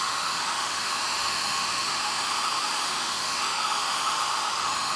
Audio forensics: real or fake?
fake